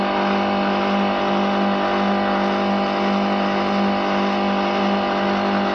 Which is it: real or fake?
real